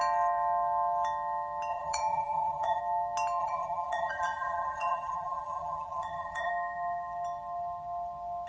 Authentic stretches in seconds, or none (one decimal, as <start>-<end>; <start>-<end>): 0.0-1.7; 2.8-3.4; 6.5-8.5